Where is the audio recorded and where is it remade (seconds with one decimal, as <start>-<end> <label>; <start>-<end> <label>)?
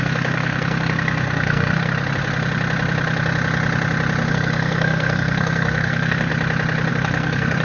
0.0-1.9 remade; 1.9-4.3 recorded; 4.3-6.3 remade; 6.3-6.9 recorded; 6.9-7.6 remade